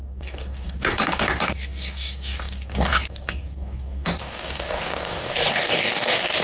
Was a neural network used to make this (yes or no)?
yes